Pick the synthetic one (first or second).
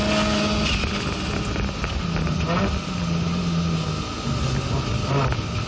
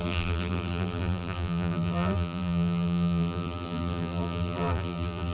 second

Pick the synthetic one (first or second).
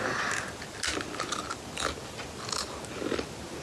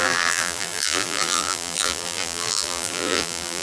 second